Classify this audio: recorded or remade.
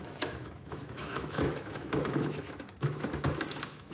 remade